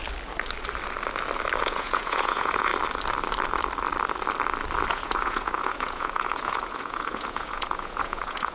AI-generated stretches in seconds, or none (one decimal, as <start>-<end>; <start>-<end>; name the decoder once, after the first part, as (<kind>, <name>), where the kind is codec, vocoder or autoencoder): 1.6-2.7 (vocoder, Vocos); 4.9-8.5